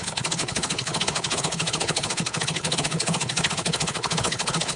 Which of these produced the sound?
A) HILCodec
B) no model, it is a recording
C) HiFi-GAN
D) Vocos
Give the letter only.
A